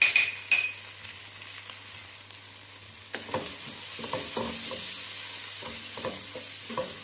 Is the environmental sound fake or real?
real